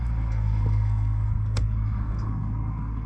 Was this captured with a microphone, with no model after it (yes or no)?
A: no